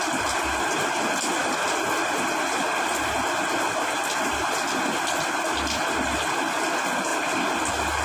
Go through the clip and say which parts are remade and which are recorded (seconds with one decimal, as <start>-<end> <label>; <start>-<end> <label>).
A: 0.0-1.4 recorded; 1.4-2.6 remade; 2.6-7.1 recorded; 7.1-8.0 remade

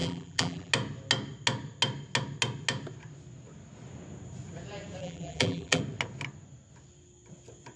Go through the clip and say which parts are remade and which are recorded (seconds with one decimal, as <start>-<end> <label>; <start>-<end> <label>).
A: 0.0-0.7 remade; 0.7-5.0 recorded; 5.0-5.8 remade; 5.8-7.8 recorded

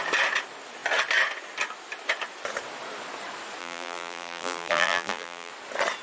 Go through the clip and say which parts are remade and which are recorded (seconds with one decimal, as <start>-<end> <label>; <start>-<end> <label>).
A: 0.0-3.6 recorded; 3.6-5.5 remade; 5.5-6.0 recorded

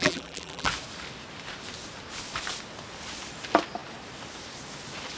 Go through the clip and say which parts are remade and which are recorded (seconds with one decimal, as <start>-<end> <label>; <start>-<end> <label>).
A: 0.0-0.7 remade; 0.7-5.2 recorded

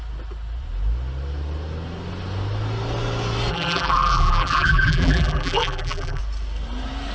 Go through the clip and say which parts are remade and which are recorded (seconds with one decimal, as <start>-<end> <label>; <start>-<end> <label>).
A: 0.0-3.5 recorded; 3.5-6.2 remade; 6.2-7.1 recorded

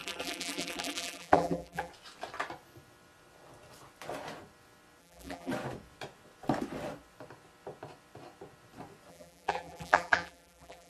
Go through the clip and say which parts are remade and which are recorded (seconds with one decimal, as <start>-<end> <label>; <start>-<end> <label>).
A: 0.0-1.9 remade; 1.9-5.0 recorded; 5.0-5.5 remade; 5.5-9.1 recorded; 9.1-10.9 remade

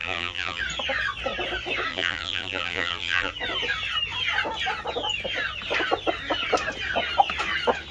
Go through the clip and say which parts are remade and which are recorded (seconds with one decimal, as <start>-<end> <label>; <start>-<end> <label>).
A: 0.0-0.6 remade; 0.6-1.9 recorded; 1.9-3.3 remade; 3.3-7.9 recorded